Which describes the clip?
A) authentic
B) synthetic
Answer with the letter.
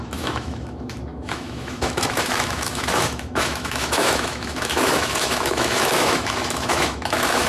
B